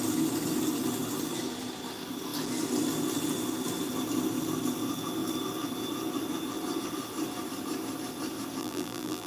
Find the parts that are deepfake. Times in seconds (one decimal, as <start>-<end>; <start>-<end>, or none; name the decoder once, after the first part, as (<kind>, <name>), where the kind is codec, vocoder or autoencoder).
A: 8.6-9.3 (vocoder, BigVGAN v2)